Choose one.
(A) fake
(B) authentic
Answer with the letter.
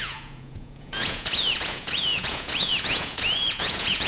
A